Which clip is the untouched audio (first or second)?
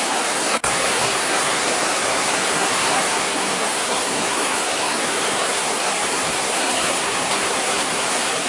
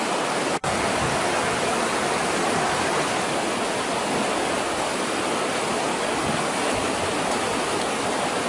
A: second